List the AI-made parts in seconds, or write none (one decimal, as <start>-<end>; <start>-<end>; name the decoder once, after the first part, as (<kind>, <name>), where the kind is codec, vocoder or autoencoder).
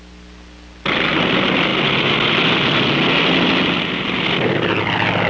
none